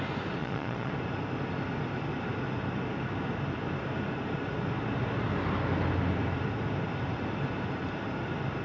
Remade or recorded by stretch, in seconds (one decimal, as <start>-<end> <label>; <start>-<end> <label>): 0.0-0.4 recorded; 0.4-0.9 remade; 0.9-8.6 recorded